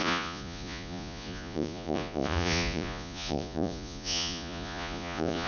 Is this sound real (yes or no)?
no